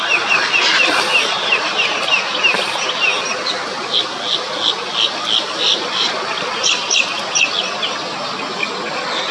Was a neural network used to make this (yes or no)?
no